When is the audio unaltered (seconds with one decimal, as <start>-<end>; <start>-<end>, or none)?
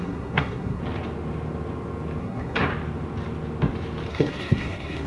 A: 0.8-2.2; 2.7-4.1